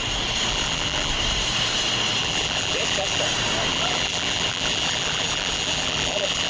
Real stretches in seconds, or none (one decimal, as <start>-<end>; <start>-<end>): 0.0-0.5; 1.1-2.2; 3.2-3.7